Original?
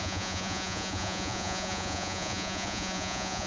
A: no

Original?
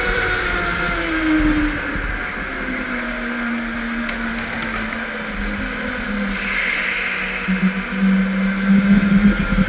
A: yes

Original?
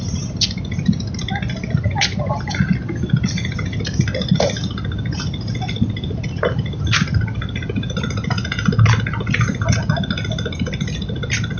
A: yes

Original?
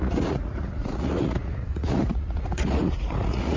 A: no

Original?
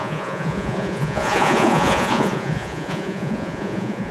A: no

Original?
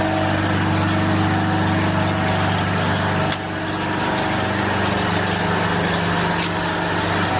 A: yes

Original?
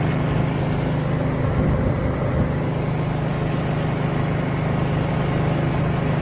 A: yes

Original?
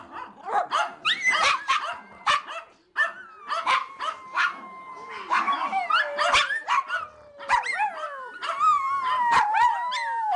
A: yes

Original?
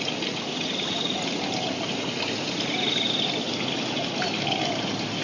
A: yes